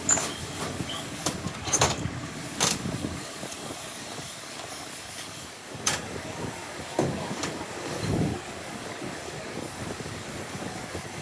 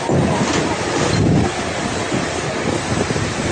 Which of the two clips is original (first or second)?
second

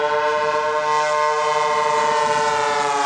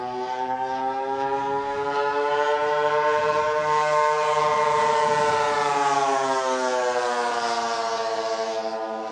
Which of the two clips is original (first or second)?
first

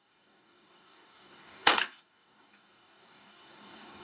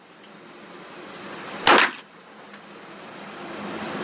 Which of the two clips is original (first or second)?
second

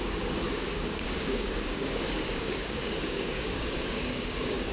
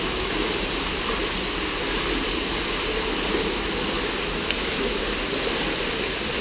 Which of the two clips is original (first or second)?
second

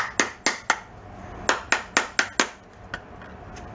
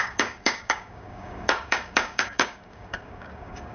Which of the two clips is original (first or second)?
first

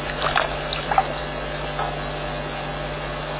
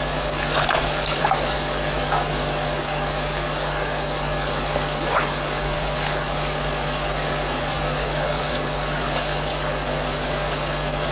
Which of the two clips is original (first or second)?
first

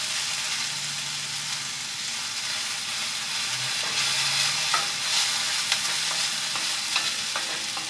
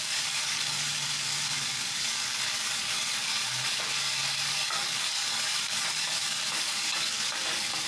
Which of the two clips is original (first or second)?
first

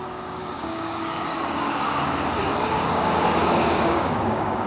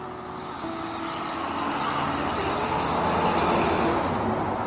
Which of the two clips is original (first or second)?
second